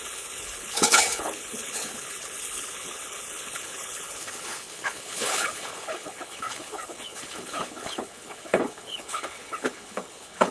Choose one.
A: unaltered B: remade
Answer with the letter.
B